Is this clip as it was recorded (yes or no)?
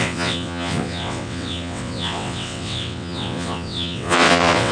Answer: no